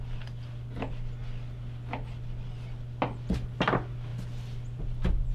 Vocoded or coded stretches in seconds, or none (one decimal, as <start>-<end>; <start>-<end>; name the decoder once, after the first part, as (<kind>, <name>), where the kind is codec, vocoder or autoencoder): none